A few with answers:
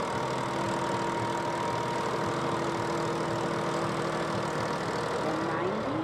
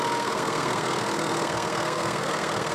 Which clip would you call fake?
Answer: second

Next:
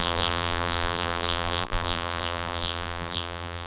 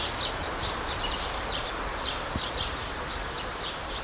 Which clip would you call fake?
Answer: first